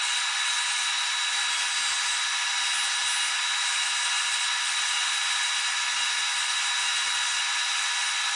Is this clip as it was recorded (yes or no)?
yes